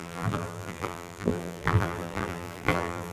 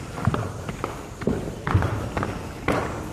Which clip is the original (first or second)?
second